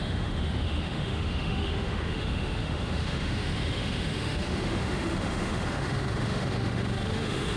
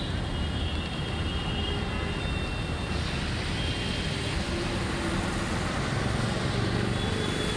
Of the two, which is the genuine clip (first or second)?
second